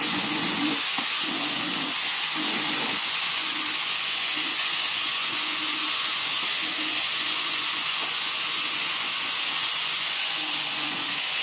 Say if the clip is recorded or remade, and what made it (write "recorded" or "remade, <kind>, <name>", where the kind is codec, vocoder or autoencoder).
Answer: remade, vocoder, Vocos